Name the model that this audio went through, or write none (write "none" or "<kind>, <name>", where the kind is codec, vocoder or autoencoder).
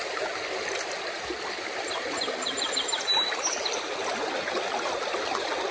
vocoder, BigVGAN v2